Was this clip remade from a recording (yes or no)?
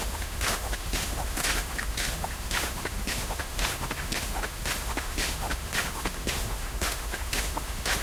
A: yes